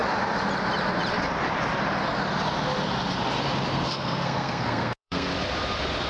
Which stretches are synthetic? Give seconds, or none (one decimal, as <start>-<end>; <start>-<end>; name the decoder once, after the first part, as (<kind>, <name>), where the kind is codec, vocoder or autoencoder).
3.7-5.3 (codec, SNAC)